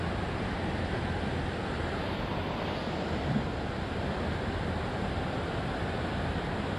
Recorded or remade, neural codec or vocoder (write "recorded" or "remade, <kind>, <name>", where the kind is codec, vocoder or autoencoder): recorded